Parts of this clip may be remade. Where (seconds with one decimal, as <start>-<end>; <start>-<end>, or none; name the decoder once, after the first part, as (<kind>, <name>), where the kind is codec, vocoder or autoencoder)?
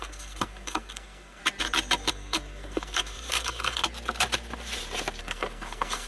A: 0.0-1.4 (codec, SNAC); 2.1-3.8; 5.2-6.1